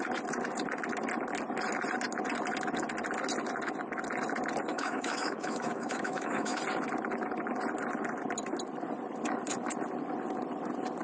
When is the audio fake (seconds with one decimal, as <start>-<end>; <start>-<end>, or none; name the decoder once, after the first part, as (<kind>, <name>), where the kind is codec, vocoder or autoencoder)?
4.7-6.6 (autoencoder, DAC-VAE)